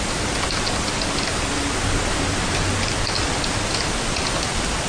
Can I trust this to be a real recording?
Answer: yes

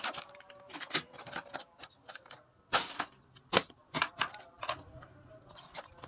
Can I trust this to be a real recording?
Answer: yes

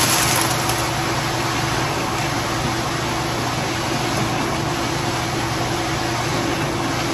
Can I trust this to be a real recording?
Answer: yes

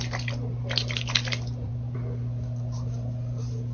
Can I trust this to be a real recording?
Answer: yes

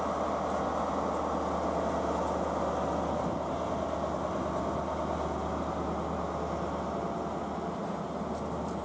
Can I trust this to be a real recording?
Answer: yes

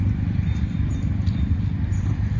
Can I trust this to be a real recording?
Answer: yes